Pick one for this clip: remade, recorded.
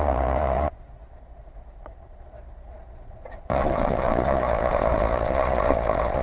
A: remade